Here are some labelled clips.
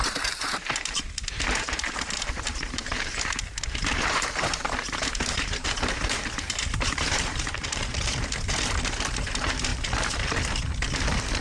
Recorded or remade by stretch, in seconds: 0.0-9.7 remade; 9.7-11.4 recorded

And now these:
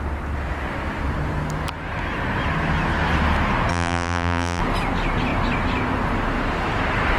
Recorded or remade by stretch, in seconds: 0.0-3.7 recorded; 3.7-4.6 remade; 4.6-7.2 recorded

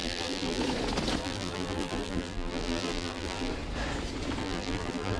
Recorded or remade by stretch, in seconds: 0.0-0.6 remade; 0.6-1.2 recorded; 1.2-3.5 remade; 3.5-4.4 recorded; 4.4-5.2 remade

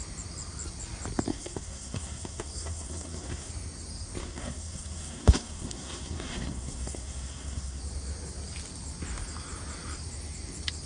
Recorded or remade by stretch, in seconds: 0.0-1.3 recorded; 1.3-3.5 remade; 3.5-4.2 recorded; 4.2-7.8 remade; 7.8-10.9 recorded

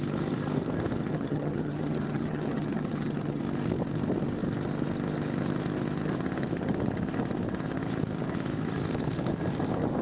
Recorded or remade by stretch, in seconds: 0.0-1.1 recorded; 1.1-3.4 remade; 3.4-10.0 recorded

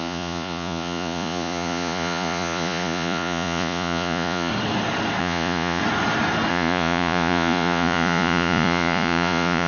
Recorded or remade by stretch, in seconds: 0.0-4.5 remade; 4.5-5.2 recorded; 5.2-5.8 remade; 5.8-6.5 recorded; 6.5-9.7 remade

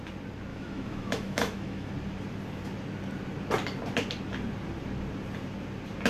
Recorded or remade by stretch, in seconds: 0.0-0.5 recorded; 0.5-1.9 remade; 1.9-6.1 recorded